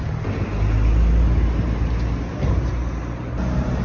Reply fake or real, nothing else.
real